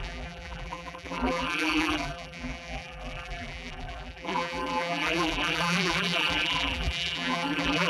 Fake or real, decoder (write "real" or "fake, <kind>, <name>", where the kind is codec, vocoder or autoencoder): fake, vocoder, BigVGAN v2